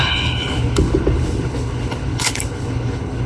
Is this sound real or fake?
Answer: fake